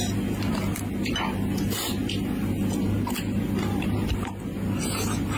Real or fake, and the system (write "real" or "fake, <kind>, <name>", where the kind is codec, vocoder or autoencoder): real